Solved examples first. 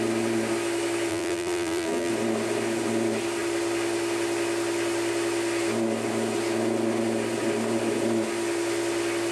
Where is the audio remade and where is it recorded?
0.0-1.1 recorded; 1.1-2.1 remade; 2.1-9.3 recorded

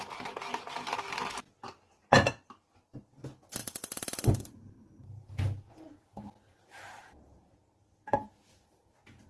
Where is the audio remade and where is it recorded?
0.0-3.6 recorded; 3.6-5.3 remade; 5.3-6.5 recorded; 6.5-8.3 remade; 8.3-9.3 recorded